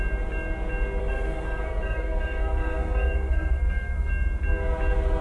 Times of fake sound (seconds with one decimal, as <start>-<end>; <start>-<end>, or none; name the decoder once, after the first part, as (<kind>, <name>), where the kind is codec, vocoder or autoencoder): 1.0-4.1 (codec, SNAC)